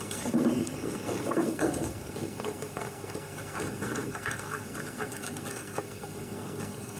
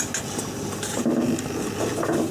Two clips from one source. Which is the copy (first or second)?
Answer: first